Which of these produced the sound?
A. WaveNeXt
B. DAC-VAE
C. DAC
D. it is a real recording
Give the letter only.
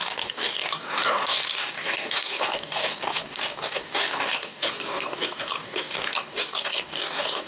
C